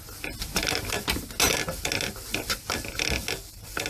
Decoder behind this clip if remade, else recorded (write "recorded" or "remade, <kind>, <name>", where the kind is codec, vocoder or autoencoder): recorded